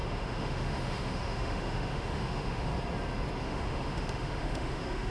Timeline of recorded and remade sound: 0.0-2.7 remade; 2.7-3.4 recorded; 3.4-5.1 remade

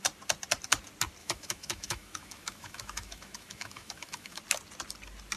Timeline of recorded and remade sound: 0.0-1.2 recorded; 1.2-4.4 remade; 4.4-5.4 recorded

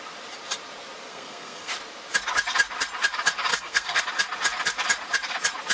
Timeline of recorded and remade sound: 0.0-1.1 recorded; 1.1-1.7 remade; 1.7-3.5 recorded; 3.5-4.0 remade; 4.0-5.7 recorded

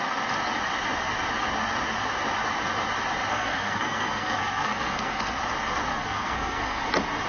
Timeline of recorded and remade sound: 0.0-3.3 recorded; 3.3-5.4 remade; 5.4-5.9 recorded; 5.9-6.8 remade; 6.8-7.3 recorded

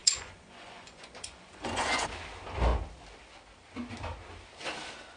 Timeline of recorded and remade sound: 0.0-2.1 remade; 2.1-5.2 recorded

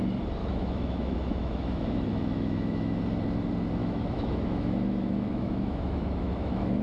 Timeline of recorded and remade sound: 0.0-0.4 recorded; 0.4-3.0 remade; 3.0-3.8 recorded; 3.8-6.8 remade

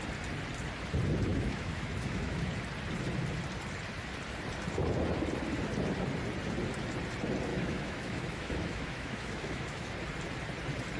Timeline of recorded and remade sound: 0.0-1.3 recorded; 1.3-2.5 remade; 2.5-7.5 recorded; 7.5-9.9 remade; 9.9-11.0 recorded